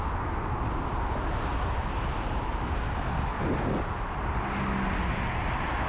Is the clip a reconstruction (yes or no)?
no